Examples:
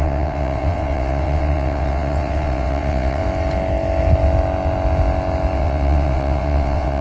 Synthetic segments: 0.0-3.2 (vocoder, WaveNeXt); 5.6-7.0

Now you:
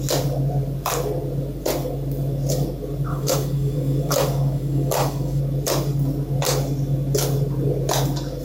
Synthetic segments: 3.1-5.4 (codec, DAC)

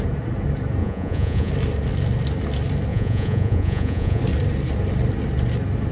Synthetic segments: 0.8-1.5 (vocoder, Vocos); 2.9-4.2

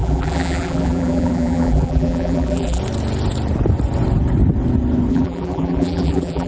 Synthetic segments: 0.0-2.8 (vocoder, BigVGAN v2); 5.1-6.5

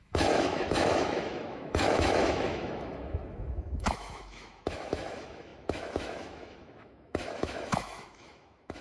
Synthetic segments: 0.0-8.8 (autoencoder, DAC-VAE)

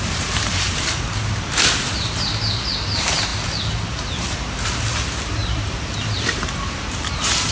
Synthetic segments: 0.0-7.5 (vocoder, BigVGAN v2)

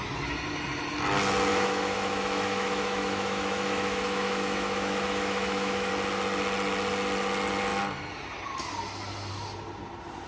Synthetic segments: 1.5-5.9 (autoencoder, DAC-VAE)